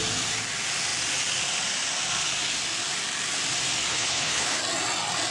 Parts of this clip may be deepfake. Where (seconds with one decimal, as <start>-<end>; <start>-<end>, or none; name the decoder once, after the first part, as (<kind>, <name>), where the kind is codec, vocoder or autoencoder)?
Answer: 3.9-4.6 (codec, HILCodec)